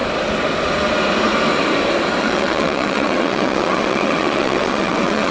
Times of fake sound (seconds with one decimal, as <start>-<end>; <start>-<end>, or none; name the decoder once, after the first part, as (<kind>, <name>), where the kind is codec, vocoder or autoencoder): 2.2-5.3 (vocoder, WaveNeXt)